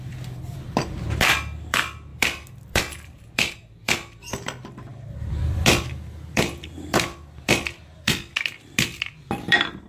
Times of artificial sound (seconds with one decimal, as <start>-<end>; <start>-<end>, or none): 0.0-8.3; 9.3-9.9